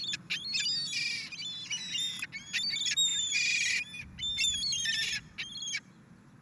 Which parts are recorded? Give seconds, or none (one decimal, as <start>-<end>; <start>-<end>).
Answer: 0.0-6.4